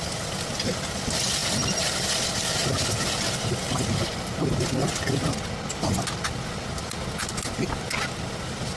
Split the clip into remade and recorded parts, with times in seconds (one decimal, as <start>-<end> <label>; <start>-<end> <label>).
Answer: 0.0-8.8 recorded